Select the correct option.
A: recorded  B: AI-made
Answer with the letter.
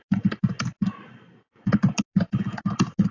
A